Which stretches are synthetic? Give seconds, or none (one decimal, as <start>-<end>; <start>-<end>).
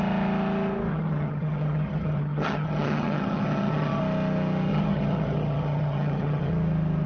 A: 0.9-4.0; 4.7-6.5